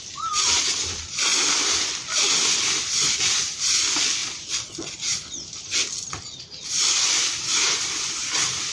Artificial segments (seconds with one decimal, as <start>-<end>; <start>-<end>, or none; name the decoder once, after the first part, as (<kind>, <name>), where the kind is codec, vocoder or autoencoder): none